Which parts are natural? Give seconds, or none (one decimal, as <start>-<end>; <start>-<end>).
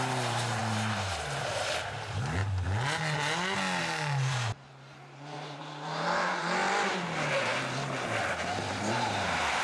2.4-3.8; 6.6-8.7